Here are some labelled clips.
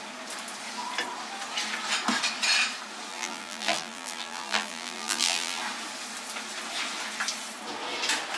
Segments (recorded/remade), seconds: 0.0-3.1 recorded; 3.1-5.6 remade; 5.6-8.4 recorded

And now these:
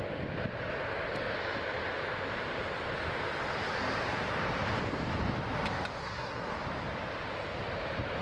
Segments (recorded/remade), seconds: 0.0-6.0 recorded; 6.0-6.5 remade; 6.5-8.2 recorded

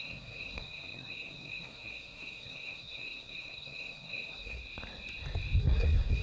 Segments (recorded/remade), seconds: 0.0-4.6 remade; 4.6-5.6 recorded; 5.6-6.2 remade

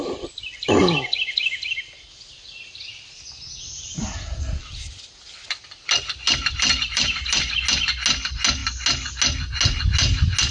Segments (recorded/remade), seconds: 0.0-0.8 recorded; 0.8-2.1 remade; 2.1-6.4 recorded; 6.4-7.5 remade; 7.5-10.5 recorded

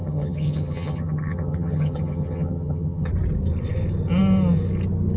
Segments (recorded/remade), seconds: 0.0-3.1 remade; 3.1-5.2 recorded

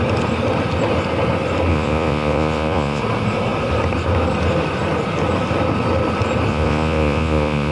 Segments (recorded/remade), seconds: 0.0-1.7 recorded; 1.7-3.0 remade; 3.0-6.5 recorded; 6.5-7.7 remade